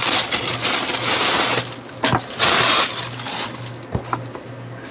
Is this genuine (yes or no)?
yes